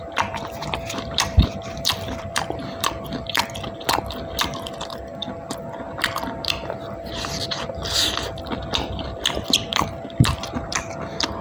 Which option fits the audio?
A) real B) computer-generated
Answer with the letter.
B